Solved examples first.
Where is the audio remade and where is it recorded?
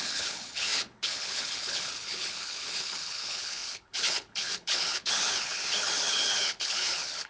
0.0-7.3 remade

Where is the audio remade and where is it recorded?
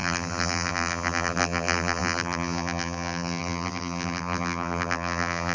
0.0-5.5 remade